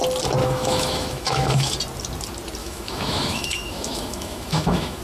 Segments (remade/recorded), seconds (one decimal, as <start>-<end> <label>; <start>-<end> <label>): 0.0-0.4 recorded; 0.4-1.7 remade; 1.7-2.6 recorded; 2.6-5.0 remade